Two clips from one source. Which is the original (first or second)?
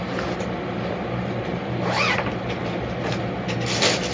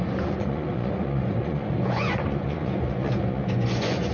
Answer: first